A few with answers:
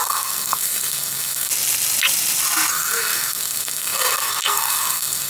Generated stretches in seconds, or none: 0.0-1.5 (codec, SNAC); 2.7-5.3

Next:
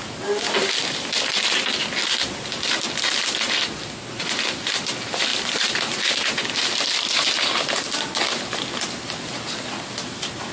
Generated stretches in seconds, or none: none

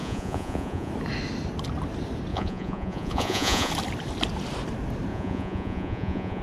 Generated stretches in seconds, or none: 0.0-0.9 (vocoder, Vocos); 2.3-3.7; 5.1-6.4